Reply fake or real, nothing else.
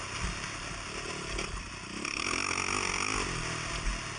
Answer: real